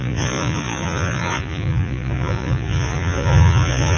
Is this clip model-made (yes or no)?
yes